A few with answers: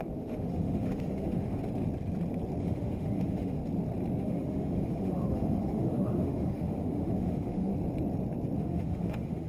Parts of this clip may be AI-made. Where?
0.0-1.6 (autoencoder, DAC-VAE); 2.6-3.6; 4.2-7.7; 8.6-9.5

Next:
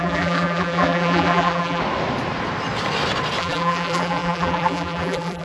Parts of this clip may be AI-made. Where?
0.0-1.8 (vocoder, BigVGAN v2); 3.4-5.4

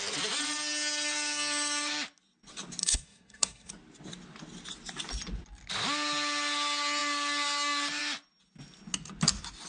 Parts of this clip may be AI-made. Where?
2.8-3.7 (codec, SNAC)

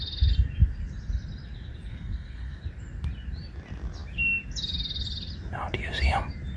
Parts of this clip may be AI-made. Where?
1.9-2.6 (codec, SNAC)

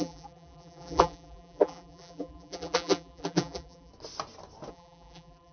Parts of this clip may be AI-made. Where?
0.0-3.9 (vocoder, BigVGAN v2); 4.7-5.5

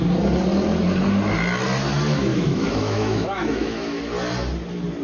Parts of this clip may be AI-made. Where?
2.3-4.0 (autoencoder, DAC-VAE)